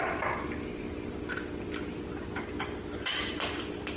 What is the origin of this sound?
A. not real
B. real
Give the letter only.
B